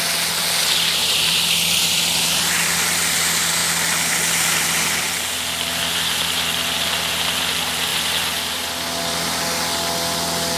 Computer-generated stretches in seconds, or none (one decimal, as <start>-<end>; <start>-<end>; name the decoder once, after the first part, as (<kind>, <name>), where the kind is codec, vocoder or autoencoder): 1.0-3.1 (vocoder, BigVGAN v2)